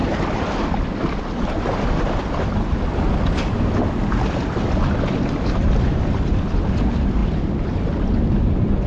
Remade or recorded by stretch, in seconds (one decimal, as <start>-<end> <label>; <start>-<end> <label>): 0.0-4.1 recorded; 4.1-8.9 remade